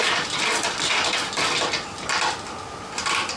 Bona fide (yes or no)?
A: no